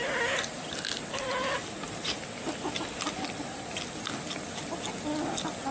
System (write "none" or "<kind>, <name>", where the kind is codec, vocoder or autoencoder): none